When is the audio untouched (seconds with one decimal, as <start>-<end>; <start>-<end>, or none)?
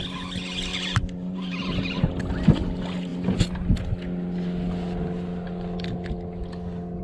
0.0-0.7; 2.1-7.0